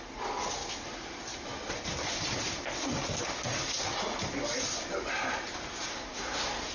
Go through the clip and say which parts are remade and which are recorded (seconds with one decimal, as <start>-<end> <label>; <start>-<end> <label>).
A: 0.0-5.9 recorded; 5.9-6.7 remade